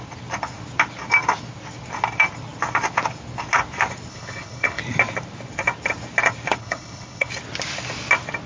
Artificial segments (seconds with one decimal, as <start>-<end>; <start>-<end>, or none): 4.1-4.8; 6.6-7.3